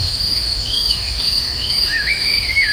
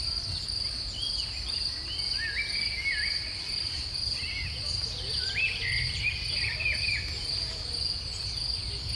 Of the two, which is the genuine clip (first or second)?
second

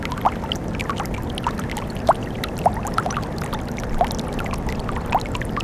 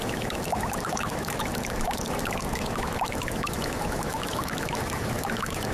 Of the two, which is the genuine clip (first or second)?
first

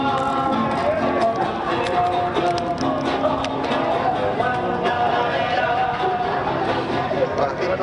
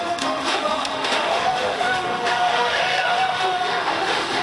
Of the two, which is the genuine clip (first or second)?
first